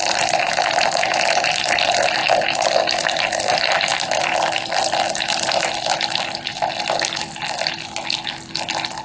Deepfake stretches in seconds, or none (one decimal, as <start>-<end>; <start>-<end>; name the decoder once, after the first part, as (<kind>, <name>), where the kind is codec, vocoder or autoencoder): none